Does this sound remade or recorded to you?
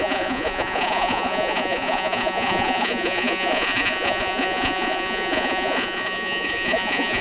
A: remade